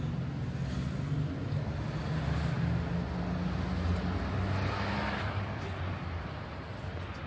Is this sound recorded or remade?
recorded